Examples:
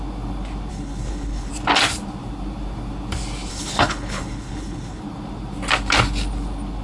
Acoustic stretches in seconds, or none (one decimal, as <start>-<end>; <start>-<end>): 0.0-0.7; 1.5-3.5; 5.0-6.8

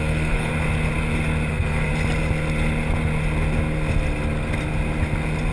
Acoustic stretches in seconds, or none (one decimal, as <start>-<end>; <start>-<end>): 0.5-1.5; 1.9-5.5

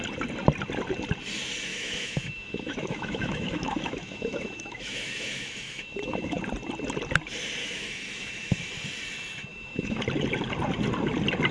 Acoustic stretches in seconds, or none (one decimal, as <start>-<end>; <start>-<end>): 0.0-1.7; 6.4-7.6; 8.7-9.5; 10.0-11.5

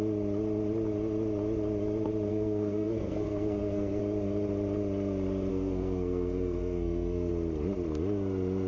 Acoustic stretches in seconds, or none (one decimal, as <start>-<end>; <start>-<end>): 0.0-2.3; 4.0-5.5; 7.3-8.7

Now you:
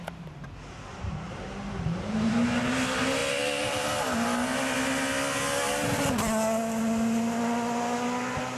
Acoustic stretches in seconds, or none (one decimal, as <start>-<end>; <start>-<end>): 0.0-0.9; 2.3-8.6